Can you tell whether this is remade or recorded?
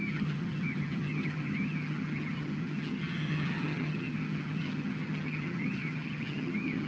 remade